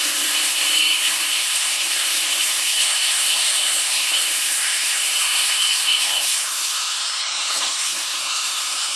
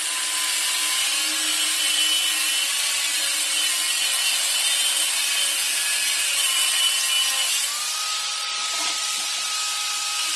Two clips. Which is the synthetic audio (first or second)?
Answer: first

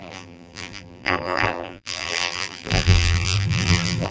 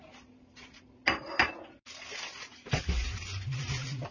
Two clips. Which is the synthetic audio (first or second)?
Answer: first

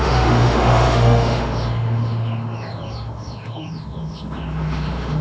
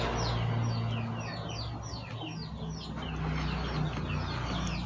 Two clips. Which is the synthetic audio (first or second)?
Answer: first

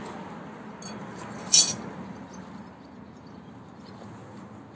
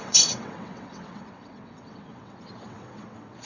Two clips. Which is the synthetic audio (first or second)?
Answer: second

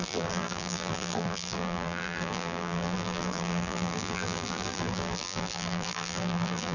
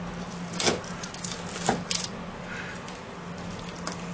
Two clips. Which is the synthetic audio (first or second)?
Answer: first